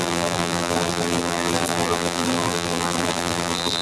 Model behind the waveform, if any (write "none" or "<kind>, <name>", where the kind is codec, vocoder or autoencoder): vocoder, BigVGAN v2